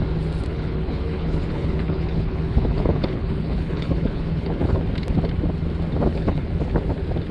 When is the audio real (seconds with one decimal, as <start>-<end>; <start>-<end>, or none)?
0.0-0.5; 4.8-6.1; 6.6-7.3